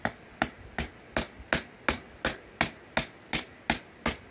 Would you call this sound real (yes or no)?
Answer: yes